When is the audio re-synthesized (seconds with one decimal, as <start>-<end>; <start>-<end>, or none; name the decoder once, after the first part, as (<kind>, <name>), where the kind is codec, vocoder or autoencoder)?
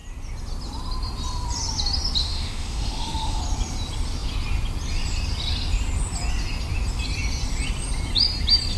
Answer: 2.2-3.4 (autoencoder, DAC-VAE)